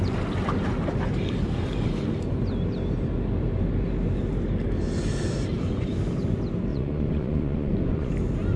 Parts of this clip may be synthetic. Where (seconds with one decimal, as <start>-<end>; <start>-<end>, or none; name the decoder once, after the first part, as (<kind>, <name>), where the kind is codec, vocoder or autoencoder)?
6.7-8.1 (vocoder, Vocos)